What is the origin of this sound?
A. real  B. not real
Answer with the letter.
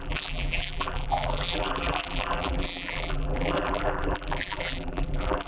B